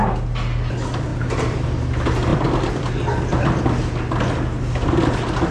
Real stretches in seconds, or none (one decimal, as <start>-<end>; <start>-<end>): 0.0-2.3; 2.9-5.5

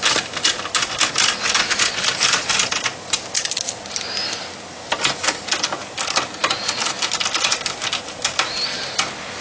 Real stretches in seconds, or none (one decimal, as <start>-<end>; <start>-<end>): 0.0-9.4